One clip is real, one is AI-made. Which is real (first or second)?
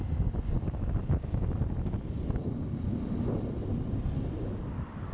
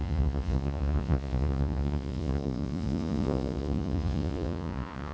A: first